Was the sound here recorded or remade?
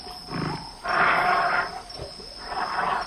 recorded